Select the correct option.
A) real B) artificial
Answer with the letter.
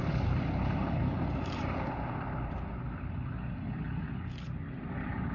A